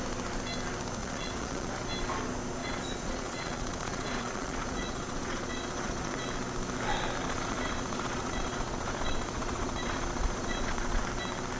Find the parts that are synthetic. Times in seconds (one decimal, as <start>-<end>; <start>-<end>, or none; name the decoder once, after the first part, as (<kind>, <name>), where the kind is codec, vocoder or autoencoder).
1.0-1.7 (vocoder, Vocos); 2.6-6.2; 7.2-11.0